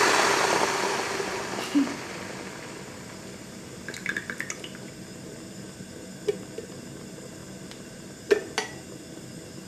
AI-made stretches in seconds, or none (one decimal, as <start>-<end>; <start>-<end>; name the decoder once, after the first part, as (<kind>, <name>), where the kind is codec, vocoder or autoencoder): 7.4-8.2 (vocoder, BigVGAN v2)